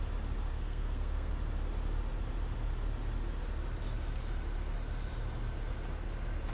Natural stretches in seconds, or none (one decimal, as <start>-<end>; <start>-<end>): 0.0-0.5; 1.3-6.5